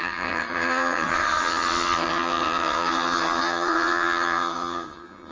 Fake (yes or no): yes